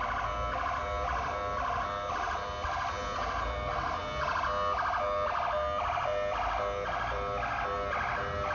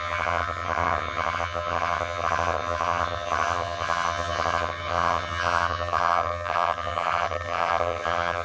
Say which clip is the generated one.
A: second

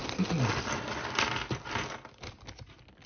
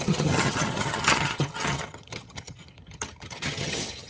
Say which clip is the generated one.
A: second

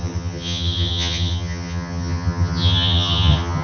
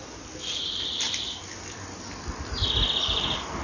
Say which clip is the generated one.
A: first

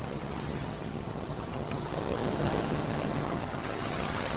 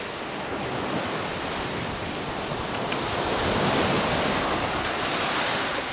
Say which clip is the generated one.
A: first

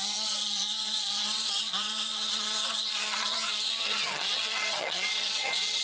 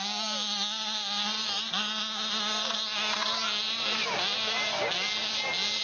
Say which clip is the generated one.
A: first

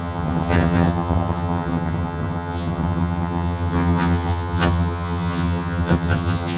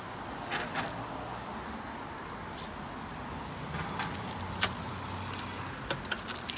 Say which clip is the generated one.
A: first